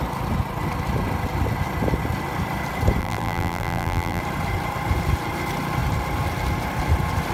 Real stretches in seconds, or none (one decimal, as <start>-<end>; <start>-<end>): 0.0-3.0; 4.2-7.3